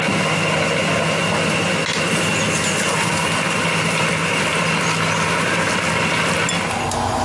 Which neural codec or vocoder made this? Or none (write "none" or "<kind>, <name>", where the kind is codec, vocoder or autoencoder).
none